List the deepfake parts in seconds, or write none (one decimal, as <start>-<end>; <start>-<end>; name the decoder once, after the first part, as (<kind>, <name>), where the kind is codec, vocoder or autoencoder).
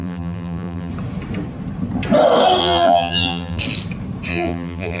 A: 0.0-0.9 (vocoder, BigVGAN v2); 2.6-3.6; 4.3-5.0